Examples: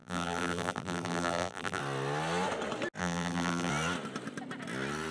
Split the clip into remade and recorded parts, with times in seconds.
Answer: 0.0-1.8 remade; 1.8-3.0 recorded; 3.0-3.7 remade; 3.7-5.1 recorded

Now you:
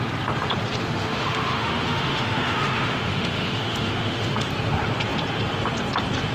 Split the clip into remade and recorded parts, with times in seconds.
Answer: 0.0-0.8 recorded; 0.8-4.5 remade; 4.5-6.3 recorded

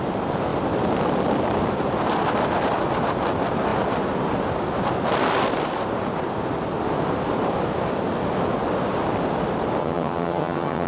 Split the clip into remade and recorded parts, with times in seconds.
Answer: 0.0-9.8 recorded; 9.8-10.9 remade

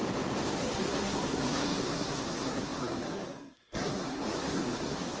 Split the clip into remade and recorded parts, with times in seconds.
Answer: 0.0-0.5 recorded; 0.5-5.2 remade

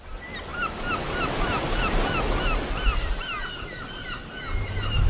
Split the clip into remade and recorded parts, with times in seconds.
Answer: 0.0-5.1 recorded

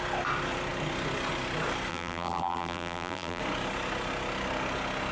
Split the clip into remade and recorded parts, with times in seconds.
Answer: 0.0-1.9 recorded; 1.9-3.4 remade; 3.4-5.1 recorded

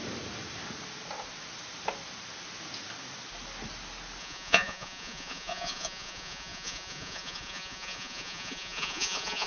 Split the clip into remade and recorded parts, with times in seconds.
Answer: 0.0-4.2 recorded; 4.2-9.5 remade

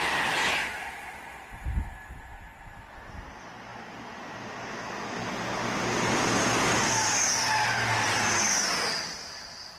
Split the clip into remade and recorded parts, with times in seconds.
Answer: 0.0-9.8 recorded